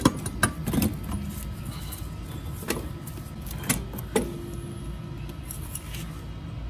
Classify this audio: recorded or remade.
recorded